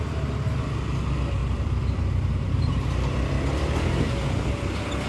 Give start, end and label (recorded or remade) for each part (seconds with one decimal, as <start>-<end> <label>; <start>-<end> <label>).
0.0-1.4 recorded; 1.4-2.7 remade; 2.7-5.1 recorded